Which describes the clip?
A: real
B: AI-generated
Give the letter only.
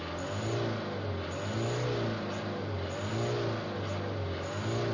A